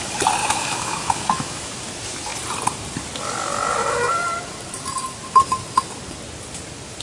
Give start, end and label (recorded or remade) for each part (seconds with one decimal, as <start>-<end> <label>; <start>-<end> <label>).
0.0-0.4 recorded; 0.4-1.7 remade; 1.7-7.0 recorded